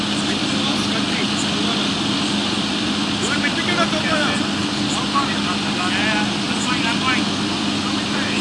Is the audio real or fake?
real